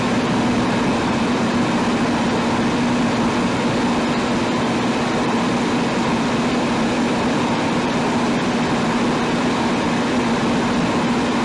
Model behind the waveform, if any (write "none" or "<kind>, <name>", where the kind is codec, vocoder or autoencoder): none